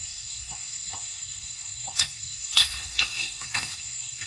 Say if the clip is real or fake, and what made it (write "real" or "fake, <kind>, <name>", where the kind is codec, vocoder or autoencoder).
fake, codec, SNAC